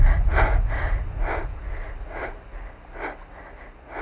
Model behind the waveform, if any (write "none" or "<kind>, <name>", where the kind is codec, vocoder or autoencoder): none